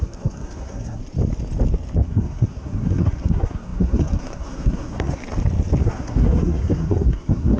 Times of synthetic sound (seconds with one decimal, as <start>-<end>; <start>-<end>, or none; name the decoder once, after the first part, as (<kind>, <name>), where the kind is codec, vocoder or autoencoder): 0.0-1.0 (codec, SNAC); 2.0-5.2; 5.8-7.6